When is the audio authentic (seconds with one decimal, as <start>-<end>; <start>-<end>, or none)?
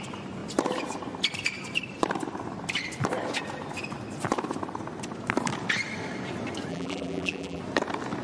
0.0-6.7; 7.6-8.2